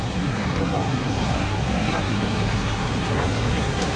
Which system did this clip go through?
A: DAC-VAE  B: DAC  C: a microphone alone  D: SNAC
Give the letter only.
D